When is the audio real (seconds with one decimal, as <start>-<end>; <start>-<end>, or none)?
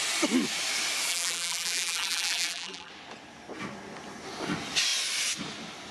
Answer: 0.0-1.1; 2.9-5.9